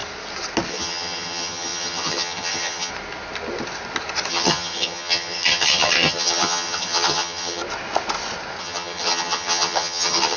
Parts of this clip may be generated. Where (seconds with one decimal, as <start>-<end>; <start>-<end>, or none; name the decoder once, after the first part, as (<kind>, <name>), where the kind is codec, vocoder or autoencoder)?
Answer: 0.7-2.9 (vocoder, HiFi-GAN); 4.3-7.6; 8.6-10.4